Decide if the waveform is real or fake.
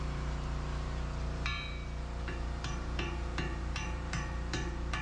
fake